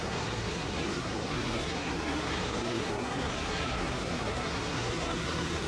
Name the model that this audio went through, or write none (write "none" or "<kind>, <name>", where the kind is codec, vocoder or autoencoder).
codec, SNAC